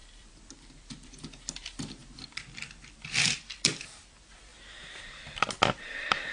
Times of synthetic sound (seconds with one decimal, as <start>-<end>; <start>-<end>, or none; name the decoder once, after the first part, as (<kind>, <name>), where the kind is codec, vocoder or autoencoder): 0.0-4.5 (vocoder, BigVGAN v2); 5.7-6.3